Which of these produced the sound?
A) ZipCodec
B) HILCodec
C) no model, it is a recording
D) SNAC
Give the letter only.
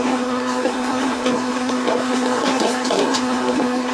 D